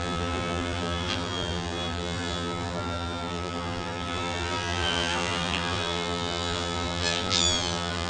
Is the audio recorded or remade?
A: remade